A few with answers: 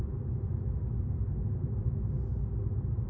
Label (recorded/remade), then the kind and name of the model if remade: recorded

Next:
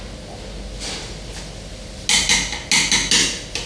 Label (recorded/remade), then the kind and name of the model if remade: recorded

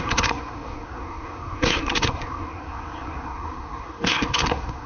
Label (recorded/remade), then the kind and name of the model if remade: remade, codec, SNAC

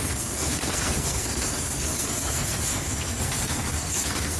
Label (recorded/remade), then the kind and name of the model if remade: remade, codec, SNAC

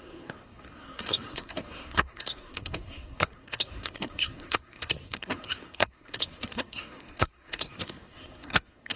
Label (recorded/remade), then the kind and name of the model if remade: remade, codec, SNAC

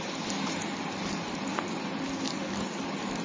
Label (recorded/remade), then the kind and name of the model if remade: recorded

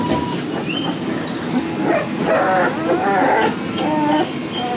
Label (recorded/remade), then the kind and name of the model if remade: recorded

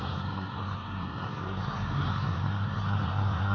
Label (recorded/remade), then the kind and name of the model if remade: remade, codec, SNAC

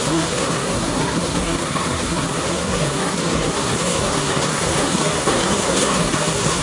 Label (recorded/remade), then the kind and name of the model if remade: remade, codec, SNAC